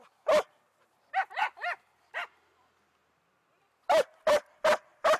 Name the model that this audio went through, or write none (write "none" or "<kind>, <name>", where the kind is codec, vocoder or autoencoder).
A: none